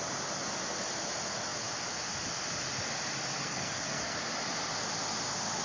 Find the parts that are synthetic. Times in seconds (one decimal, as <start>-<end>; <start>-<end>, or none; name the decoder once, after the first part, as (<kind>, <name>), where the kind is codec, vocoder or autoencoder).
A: 3.4-4.2 (codec, SNAC)